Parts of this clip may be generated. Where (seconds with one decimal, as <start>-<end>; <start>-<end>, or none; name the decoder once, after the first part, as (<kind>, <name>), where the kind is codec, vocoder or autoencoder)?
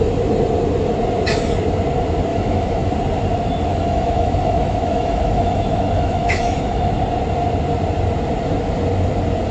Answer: 2.3-2.9 (autoencoder, DAC-VAE); 3.7-6.9